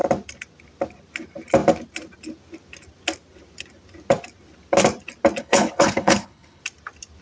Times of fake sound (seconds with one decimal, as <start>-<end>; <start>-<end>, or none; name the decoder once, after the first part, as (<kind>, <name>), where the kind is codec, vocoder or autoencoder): 5.4-6.6 (codec, HILCodec)